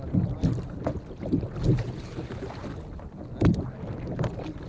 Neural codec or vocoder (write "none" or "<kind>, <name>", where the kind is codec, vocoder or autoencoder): none